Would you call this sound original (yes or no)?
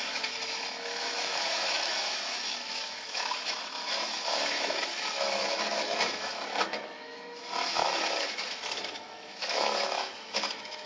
no